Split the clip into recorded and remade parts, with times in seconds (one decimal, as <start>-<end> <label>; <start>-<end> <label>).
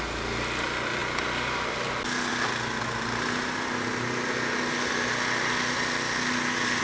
0.0-6.8 recorded